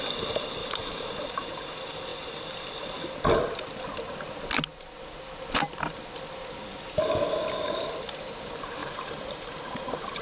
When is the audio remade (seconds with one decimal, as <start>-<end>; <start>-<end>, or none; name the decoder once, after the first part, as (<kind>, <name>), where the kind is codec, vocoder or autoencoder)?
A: 0.6-1.1 (vocoder, BigVGAN v2); 8.8-10.2